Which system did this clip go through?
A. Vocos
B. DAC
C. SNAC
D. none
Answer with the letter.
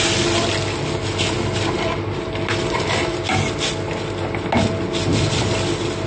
D